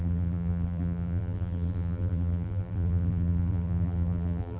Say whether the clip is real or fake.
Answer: fake